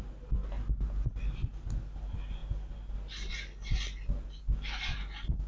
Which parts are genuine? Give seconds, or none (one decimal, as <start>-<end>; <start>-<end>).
0.0-5.5